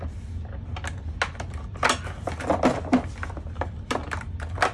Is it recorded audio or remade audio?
recorded